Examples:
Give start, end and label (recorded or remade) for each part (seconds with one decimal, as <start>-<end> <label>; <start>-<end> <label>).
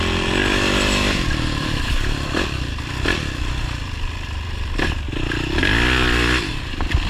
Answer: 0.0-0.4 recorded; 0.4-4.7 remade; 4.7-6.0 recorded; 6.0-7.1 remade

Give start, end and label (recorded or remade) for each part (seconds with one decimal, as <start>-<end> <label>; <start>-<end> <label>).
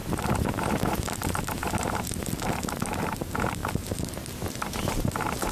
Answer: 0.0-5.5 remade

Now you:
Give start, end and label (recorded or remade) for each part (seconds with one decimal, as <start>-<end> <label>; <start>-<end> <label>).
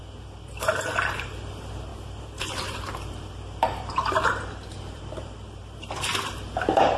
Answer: 0.0-1.2 recorded; 1.2-7.0 remade